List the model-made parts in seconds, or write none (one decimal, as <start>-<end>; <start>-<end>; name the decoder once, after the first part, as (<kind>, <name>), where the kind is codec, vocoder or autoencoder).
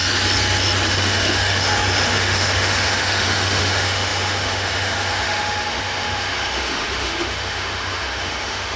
0.9-8.8 (autoencoder, DAC-VAE)